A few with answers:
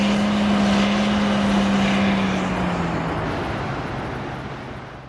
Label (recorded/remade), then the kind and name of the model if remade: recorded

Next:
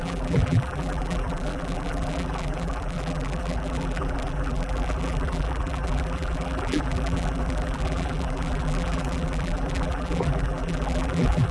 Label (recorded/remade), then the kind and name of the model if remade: remade, vocoder, BigVGAN v2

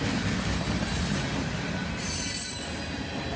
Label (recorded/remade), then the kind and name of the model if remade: recorded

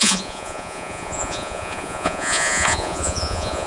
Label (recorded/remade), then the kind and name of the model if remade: remade, vocoder, Vocos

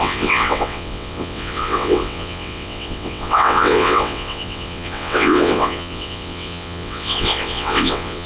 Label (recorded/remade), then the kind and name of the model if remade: remade, vocoder, WaveNeXt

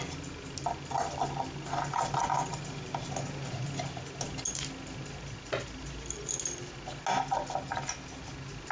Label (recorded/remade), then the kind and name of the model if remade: recorded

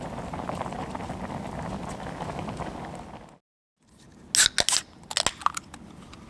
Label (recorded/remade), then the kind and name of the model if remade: recorded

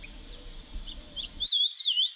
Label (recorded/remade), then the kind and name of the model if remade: remade, vocoder, BigVGAN v2